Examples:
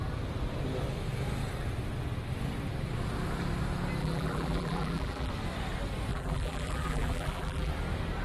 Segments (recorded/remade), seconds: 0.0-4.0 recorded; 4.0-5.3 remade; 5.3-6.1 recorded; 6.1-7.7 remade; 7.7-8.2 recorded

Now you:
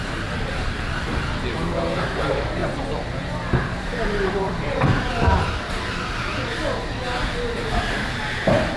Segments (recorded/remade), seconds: 0.0-1.4 remade; 1.4-2.6 recorded; 2.6-5.5 remade; 5.5-8.8 recorded

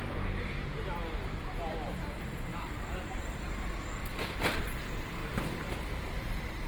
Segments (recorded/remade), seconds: 0.0-5.2 recorded; 5.2-5.9 remade; 5.9-6.7 recorded